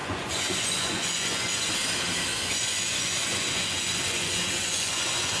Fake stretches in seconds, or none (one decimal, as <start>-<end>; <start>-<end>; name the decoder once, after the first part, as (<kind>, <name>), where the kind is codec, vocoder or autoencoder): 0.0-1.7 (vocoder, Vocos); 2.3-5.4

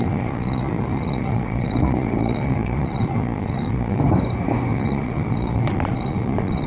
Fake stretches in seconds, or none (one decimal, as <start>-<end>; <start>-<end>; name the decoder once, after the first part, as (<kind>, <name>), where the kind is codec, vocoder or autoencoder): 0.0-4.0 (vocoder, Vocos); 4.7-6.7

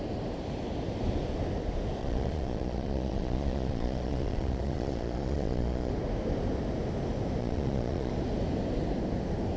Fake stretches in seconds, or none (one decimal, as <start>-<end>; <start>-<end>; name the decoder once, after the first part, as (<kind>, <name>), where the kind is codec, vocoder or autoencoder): 2.0-5.9 (vocoder, Vocos); 7.4-8.1